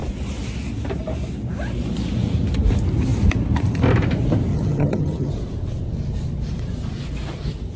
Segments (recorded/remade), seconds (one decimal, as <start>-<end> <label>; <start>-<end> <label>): 0.0-4.5 recorded; 4.5-5.3 remade; 5.3-7.8 recorded